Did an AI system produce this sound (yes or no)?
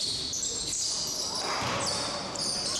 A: no